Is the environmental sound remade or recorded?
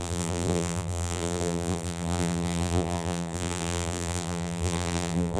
remade